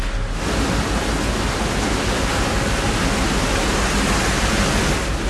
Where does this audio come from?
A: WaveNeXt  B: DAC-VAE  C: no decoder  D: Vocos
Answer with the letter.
C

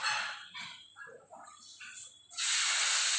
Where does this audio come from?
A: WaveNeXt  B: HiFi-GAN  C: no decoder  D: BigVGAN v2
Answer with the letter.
C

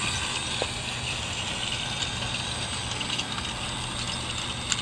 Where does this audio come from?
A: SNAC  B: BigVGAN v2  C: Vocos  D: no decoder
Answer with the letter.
D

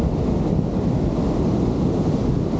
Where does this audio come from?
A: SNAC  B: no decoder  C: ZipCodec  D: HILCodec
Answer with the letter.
B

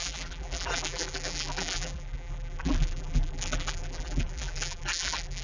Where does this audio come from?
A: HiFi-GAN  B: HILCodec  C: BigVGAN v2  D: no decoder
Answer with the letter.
C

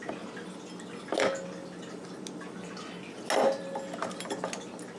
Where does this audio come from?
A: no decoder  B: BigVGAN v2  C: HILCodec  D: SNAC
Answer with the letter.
A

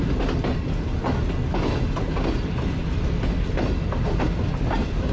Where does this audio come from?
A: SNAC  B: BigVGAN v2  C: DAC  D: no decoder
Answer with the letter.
D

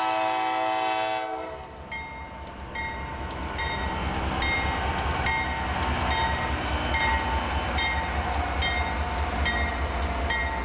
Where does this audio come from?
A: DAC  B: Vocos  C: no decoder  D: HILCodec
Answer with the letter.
C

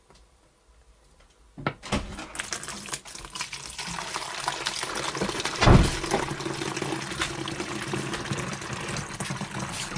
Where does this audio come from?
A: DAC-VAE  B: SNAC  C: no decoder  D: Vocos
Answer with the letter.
C